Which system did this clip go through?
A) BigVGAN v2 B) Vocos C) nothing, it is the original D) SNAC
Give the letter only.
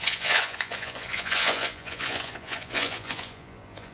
B